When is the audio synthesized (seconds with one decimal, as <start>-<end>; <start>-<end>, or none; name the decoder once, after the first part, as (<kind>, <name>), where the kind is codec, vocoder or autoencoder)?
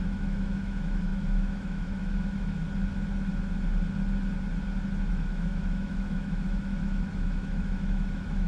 0.0-2.6 (autoencoder, DAC-VAE); 5.1-8.5